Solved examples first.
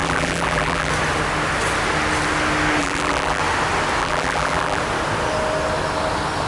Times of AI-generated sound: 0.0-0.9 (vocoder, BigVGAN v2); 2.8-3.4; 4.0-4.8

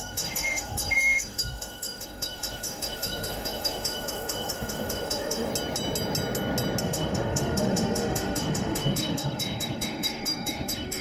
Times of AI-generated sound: 0.0-5.5 (autoencoder, DAC-VAE); 6.8-11.0

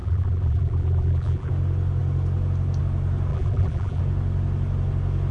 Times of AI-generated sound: 0.0-1.5 (vocoder, BigVGAN v2); 3.3-4.0

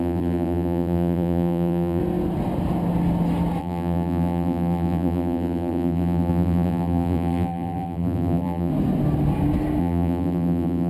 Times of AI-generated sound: 0.0-2.0 (vocoder, BigVGAN v2); 3.6-8.7; 9.8-10.9